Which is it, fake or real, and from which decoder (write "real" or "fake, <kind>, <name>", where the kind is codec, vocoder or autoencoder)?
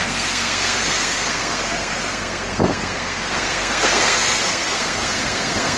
fake, codec, SNAC